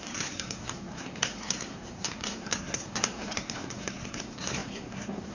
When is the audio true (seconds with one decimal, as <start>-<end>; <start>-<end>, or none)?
none